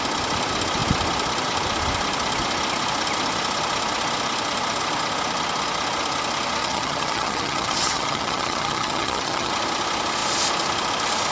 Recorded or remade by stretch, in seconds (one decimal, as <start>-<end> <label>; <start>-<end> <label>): 0.0-6.6 recorded; 6.6-9.5 remade; 9.5-11.3 recorded